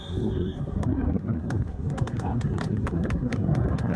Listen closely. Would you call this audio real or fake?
fake